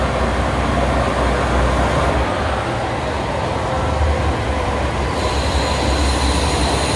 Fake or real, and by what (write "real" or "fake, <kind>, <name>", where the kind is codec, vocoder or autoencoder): real